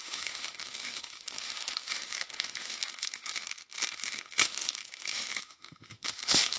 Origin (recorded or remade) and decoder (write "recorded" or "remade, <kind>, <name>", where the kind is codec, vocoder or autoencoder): remade, autoencoder, DAC-VAE